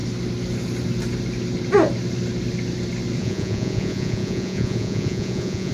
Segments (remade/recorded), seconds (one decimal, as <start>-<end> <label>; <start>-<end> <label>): 0.0-3.2 recorded; 3.2-5.7 remade